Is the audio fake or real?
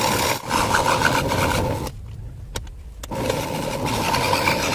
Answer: real